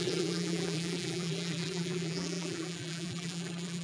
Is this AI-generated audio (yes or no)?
yes